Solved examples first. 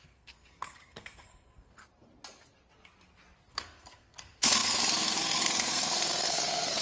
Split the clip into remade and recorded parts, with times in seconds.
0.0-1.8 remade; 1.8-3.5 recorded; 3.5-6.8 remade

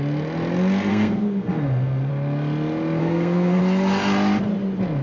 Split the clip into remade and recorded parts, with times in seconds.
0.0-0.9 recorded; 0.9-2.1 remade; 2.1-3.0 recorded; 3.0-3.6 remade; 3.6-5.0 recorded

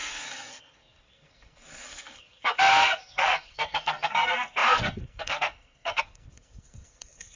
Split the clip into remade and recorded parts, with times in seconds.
0.0-7.4 remade

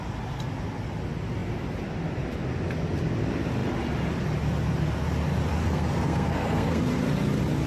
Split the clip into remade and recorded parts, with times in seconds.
0.0-5.6 recorded; 5.6-6.8 remade; 6.8-7.7 recorded

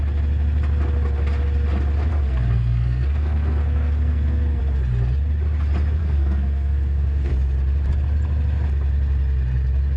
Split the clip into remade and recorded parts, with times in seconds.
0.0-2.1 recorded; 2.1-4.6 remade; 4.6-6.0 recorded; 6.0-7.3 remade; 7.3-10.0 recorded

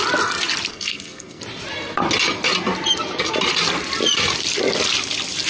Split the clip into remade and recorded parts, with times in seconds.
0.0-0.7 recorded; 0.7-1.4 remade; 1.4-5.5 recorded

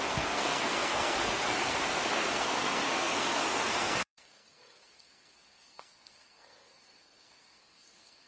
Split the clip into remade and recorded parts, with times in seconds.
0.0-8.3 remade